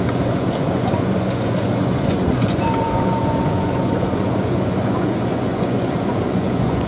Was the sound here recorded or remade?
remade